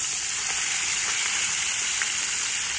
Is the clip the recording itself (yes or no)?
yes